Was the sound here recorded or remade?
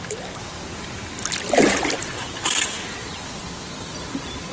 recorded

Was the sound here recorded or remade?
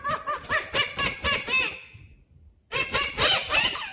recorded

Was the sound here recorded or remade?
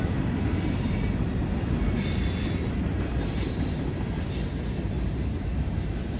recorded